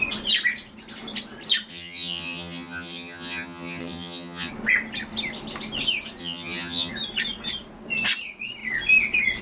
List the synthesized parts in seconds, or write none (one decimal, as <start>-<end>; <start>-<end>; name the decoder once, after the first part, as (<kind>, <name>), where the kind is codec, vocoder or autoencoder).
1.7-4.5 (vocoder, HiFi-GAN); 6.2-6.9

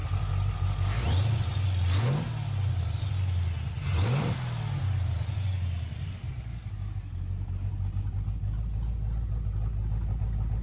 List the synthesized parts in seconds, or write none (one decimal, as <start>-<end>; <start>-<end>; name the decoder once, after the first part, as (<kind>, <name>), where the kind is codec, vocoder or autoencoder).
none

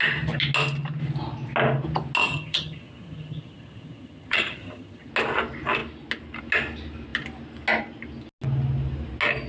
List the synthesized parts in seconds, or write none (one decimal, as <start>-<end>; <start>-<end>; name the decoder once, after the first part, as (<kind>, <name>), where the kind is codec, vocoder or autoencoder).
2.2-5.1 (vocoder, HiFi-GAN)

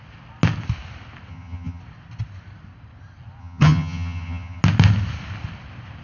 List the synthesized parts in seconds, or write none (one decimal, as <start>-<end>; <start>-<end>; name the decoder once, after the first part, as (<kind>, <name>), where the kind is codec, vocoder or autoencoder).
1.3-1.8 (vocoder, HiFi-GAN); 3.4-4.6